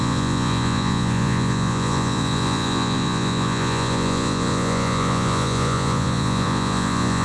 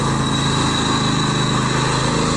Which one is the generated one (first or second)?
first